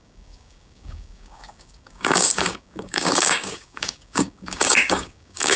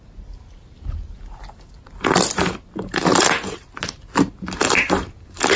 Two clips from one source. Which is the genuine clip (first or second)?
second